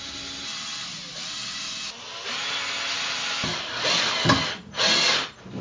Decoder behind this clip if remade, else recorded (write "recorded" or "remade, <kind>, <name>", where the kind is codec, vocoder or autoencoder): recorded